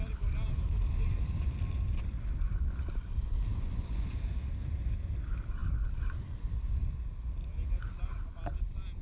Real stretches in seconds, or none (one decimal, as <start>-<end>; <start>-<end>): 0.0-3.5; 4.3-9.0